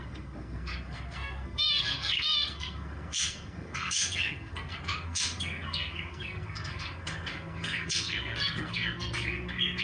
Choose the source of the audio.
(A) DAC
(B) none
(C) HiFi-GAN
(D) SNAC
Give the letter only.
D